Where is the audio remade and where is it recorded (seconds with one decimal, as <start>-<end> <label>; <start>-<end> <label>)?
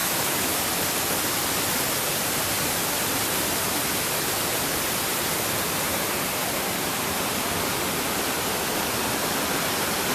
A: 0.0-0.6 remade; 0.6-10.1 recorded